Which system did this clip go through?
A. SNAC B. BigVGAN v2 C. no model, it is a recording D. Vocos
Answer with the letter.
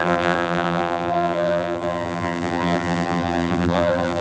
B